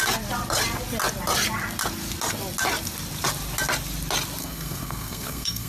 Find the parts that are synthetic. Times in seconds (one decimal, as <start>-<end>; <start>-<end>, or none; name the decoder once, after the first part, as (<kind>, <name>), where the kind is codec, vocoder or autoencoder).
4.4-5.7 (codec, SNAC)